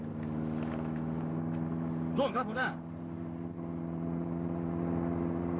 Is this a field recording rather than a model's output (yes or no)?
yes